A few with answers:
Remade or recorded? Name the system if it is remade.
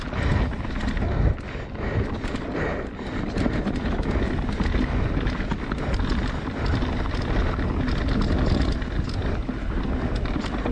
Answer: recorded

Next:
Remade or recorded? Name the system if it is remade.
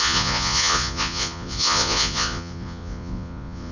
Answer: remade, vocoder, Vocos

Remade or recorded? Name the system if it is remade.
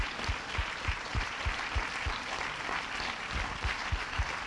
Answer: remade, vocoder, BigVGAN v2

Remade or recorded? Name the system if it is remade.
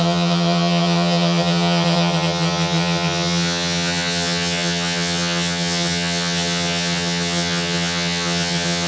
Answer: remade, vocoder, HiFi-GAN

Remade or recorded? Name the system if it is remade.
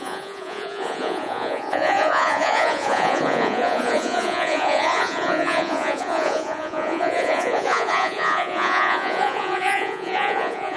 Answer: remade, vocoder, Vocos